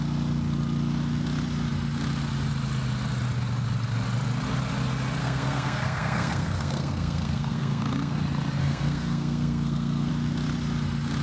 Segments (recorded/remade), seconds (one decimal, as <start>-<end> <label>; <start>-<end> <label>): 0.0-5.2 recorded; 5.2-8.2 remade; 8.2-8.6 recorded; 8.6-10.1 remade; 10.1-11.2 recorded